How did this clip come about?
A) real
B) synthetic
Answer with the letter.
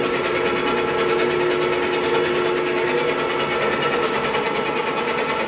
A